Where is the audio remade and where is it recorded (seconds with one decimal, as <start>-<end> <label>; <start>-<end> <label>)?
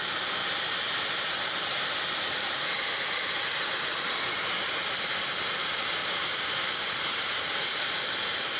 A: 0.0-8.6 remade